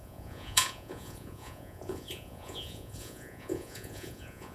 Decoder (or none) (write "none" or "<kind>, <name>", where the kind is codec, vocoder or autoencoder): vocoder, Vocos